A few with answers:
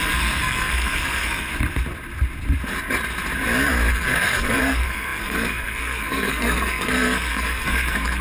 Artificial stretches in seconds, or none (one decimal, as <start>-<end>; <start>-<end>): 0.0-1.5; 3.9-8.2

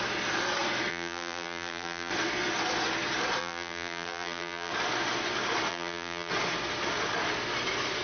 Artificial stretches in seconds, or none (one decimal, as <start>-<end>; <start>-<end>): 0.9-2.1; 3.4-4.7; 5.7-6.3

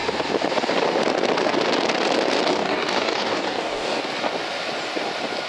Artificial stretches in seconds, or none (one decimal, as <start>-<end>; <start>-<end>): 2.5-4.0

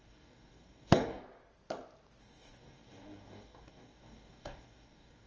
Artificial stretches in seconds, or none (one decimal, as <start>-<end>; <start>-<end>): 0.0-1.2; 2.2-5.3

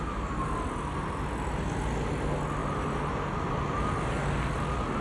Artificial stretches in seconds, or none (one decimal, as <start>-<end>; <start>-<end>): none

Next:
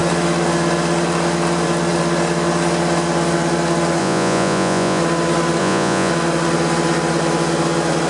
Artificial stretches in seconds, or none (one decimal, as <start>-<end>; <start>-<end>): 4.0-5.0; 5.6-6.1

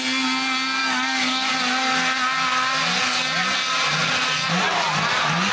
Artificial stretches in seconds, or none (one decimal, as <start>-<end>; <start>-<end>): 0.8-1.5